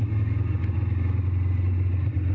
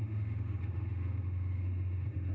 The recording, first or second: first